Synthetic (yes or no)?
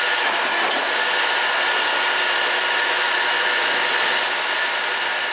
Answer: no